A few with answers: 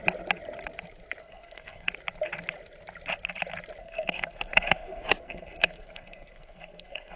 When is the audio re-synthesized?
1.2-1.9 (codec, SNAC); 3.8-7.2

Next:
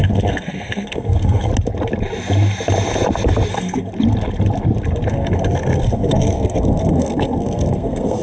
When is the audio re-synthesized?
0.0-1.5 (codec, SNAC); 3.5-3.9; 5.1-8.2